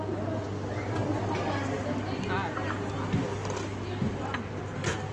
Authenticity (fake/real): real